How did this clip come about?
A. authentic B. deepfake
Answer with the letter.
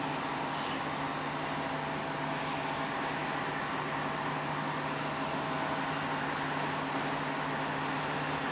A